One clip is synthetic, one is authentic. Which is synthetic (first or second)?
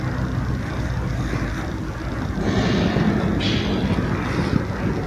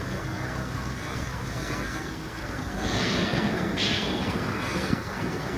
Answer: second